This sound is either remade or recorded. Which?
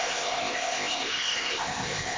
remade